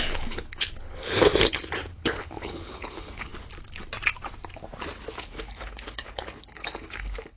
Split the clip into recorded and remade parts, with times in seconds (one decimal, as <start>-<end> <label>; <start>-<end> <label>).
0.0-3.3 remade; 3.3-5.2 recorded; 5.2-7.4 remade